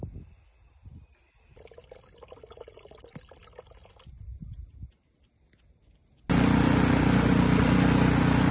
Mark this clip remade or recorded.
recorded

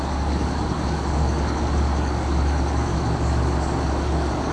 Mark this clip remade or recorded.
remade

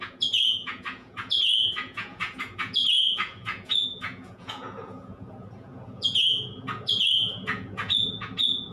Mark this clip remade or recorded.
remade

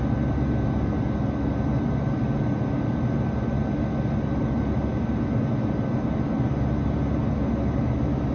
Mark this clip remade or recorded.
recorded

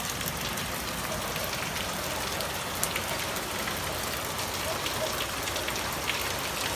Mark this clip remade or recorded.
recorded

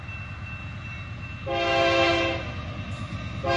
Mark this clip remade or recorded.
recorded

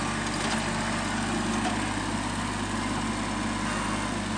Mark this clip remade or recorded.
recorded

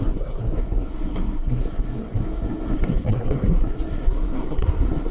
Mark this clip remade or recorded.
remade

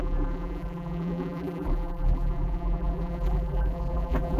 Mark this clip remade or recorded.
remade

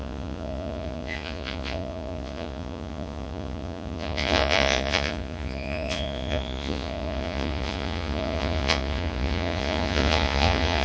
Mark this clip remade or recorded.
remade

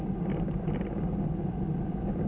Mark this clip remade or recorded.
recorded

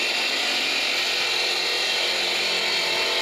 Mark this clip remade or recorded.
recorded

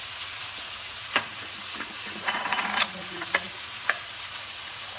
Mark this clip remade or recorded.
remade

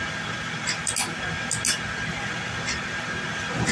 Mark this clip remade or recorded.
recorded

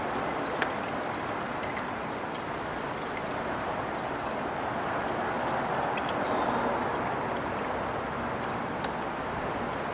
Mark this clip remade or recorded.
recorded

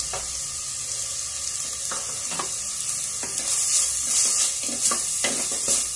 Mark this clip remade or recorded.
recorded